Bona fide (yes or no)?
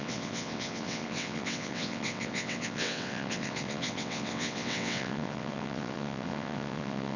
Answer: no